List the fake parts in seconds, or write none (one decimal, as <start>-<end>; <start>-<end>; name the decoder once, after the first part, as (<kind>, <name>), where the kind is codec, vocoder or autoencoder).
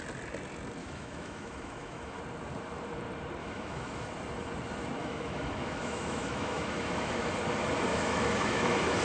0.8-2.2 (autoencoder, DAC-VAE); 3.4-4.1; 5.0-7.3; 7.9-9.0